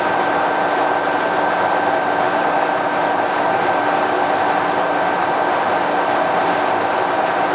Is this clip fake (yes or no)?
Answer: no